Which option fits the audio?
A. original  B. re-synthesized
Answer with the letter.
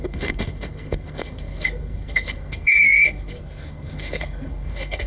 B